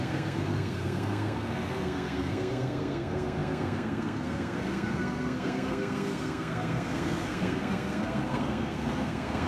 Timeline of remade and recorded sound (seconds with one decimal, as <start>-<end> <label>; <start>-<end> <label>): 0.0-9.5 remade